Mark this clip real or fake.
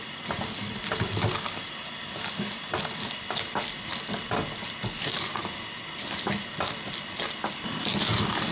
real